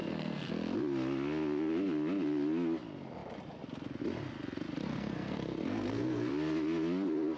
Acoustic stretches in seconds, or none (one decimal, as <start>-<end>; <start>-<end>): 0.5-4.9; 6.3-7.4